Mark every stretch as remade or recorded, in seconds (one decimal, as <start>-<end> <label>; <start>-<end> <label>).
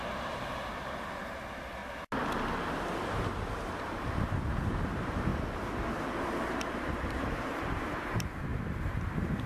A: 0.0-1.8 remade; 1.8-2.7 recorded; 2.7-5.3 remade; 5.3-6.4 recorded; 6.4-9.5 remade